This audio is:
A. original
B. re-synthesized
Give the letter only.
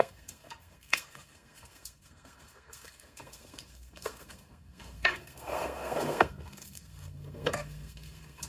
B